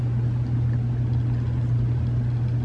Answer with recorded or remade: recorded